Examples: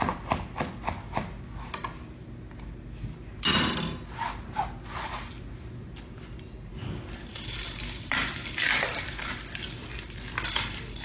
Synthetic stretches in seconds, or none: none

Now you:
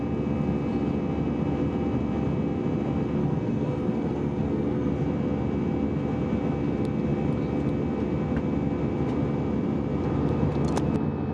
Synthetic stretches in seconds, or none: 3.2-4.9

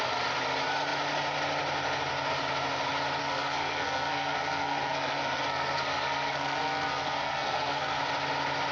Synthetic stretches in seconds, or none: 3.2-8.0

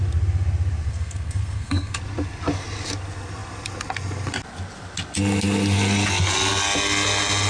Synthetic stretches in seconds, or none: 0.9-2.0

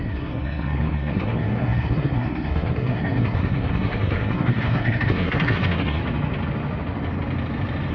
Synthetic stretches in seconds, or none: 0.0-6.0

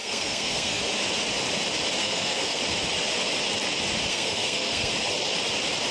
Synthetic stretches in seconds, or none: 0.0-0.8; 2.0-2.6; 4.1-4.9